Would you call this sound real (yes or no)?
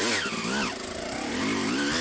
yes